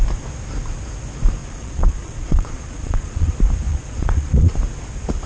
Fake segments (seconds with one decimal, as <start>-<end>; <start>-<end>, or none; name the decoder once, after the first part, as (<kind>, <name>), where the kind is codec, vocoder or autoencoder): 1.4-3.3 (vocoder, Vocos); 3.7-4.5